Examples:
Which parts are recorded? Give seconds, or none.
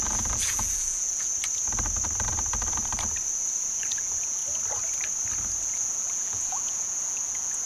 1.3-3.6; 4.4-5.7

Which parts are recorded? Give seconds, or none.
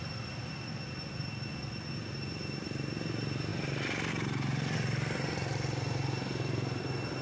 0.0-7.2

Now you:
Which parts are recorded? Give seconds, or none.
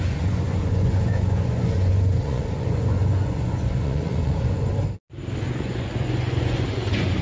4.7-5.5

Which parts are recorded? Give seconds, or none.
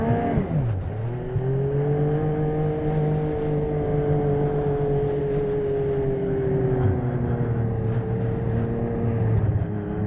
0.0-10.1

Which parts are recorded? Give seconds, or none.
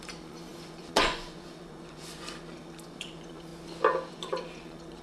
3.5-4.1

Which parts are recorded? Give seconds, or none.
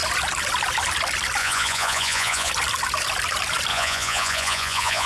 0.0-1.4; 2.5-3.7